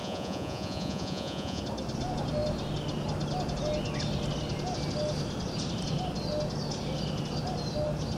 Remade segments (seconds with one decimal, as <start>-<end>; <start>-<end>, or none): 0.0-1.6